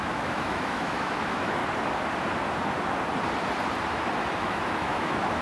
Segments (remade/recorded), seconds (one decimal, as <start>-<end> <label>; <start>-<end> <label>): 0.0-1.6 remade; 1.6-4.4 recorded; 4.4-5.4 remade